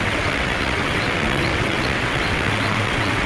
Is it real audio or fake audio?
fake